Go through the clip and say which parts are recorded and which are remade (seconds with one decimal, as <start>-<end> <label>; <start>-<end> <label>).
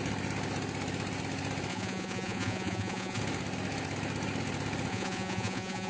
0.0-1.7 recorded; 1.7-3.2 remade; 3.2-4.9 recorded; 4.9-5.9 remade